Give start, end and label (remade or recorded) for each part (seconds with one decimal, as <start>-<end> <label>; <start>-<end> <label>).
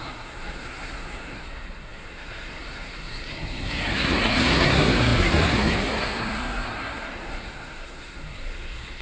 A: 0.0-9.0 remade